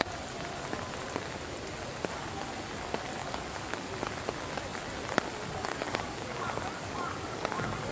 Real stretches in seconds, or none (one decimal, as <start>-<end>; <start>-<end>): 0.0-3.2; 3.9-5.7